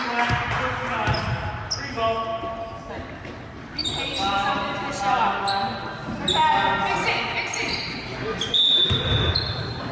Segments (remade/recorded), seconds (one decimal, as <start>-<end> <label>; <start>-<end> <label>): 0.0-9.9 recorded